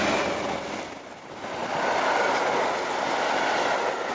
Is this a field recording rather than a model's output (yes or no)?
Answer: yes